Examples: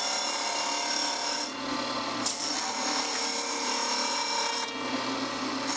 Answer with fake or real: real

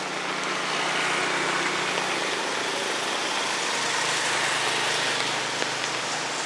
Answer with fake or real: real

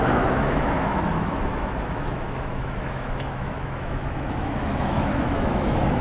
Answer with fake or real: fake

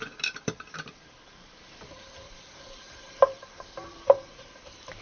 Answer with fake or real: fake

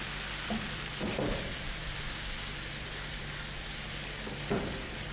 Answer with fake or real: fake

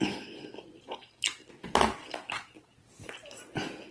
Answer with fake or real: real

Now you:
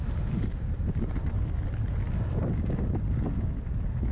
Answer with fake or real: fake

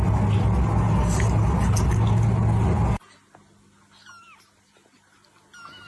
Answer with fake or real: real